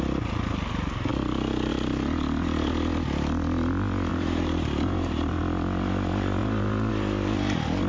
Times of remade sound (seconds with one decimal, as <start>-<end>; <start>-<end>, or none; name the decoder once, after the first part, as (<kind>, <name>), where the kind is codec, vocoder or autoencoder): 4.1-5.4 (vocoder, BigVGAN v2); 6.4-6.9